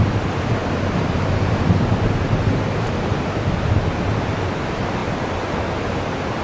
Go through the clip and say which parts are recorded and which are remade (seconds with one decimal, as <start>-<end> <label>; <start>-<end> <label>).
0.0-6.4 recorded